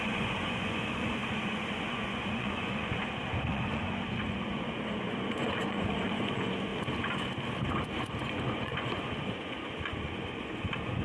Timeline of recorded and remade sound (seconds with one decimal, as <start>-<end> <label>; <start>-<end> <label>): 0.0-6.7 remade; 6.7-8.0 recorded; 8.0-11.0 remade